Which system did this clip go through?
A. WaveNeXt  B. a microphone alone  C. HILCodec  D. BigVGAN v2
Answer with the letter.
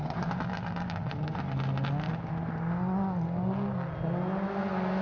B